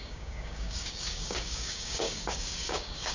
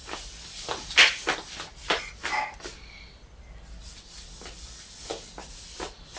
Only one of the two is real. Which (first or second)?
second